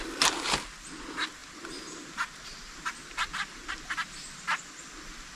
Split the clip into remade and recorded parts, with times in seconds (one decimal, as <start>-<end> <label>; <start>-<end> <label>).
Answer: 0.0-5.4 recorded

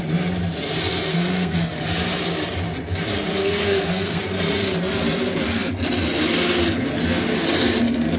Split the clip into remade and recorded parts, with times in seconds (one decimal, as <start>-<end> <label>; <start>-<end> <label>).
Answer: 0.0-1.1 recorded; 1.1-1.8 remade; 1.8-3.4 recorded; 3.4-4.2 remade; 4.2-8.2 recorded

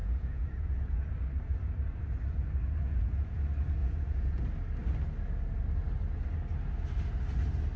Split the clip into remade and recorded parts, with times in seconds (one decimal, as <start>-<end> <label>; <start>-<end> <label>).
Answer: 0.0-1.1 remade; 1.1-2.6 recorded; 2.6-3.4 remade; 3.4-3.8 recorded; 3.8-4.4 remade; 4.4-7.8 recorded

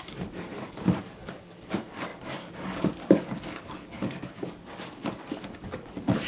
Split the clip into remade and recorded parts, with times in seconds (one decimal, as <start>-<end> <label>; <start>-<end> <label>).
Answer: 0.0-6.3 remade

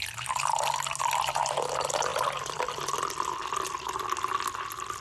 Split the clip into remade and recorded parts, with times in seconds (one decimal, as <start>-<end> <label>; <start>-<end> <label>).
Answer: 0.0-2.1 recorded; 2.1-4.0 remade; 4.0-5.0 recorded

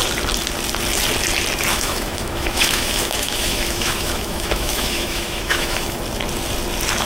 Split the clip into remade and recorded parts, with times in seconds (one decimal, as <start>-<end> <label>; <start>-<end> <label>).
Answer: 0.0-1.7 recorded; 1.7-6.0 remade; 6.0-7.1 recorded

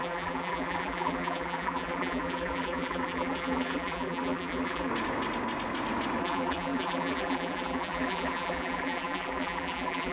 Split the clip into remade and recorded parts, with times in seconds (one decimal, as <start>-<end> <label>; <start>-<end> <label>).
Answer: 0.0-4.9 remade; 4.9-6.2 recorded; 6.2-10.1 remade